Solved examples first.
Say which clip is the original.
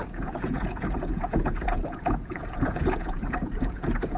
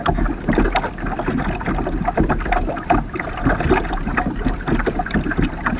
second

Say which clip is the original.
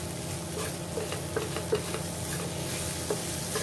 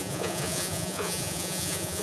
first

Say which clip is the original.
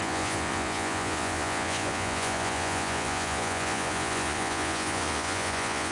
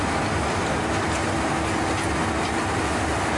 second